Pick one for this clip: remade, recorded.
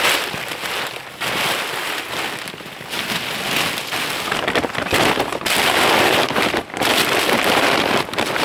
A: recorded